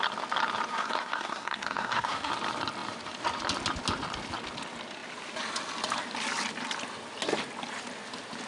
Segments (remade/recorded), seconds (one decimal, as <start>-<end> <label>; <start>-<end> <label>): 0.0-0.7 recorded; 0.7-2.3 remade; 2.3-8.5 recorded